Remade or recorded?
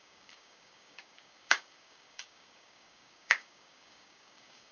remade